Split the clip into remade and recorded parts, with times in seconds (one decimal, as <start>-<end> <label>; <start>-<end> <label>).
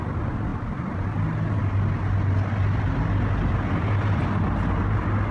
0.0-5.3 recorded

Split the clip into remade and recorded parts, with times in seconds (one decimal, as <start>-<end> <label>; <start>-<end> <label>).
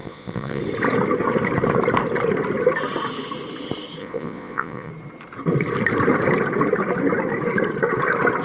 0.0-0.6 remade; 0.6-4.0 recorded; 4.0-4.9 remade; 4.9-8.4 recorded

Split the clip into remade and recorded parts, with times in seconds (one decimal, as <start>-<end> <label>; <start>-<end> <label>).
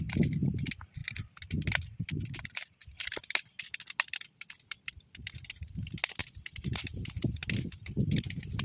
0.0-1.0 recorded; 1.0-2.4 remade; 2.4-8.6 recorded